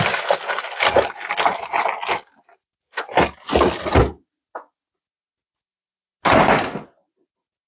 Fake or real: real